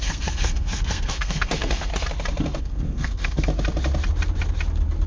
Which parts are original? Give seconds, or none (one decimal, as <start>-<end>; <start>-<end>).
1.9-2.6; 3.5-5.1